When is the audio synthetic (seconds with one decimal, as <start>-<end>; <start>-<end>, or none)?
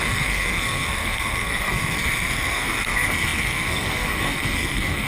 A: 0.0-5.1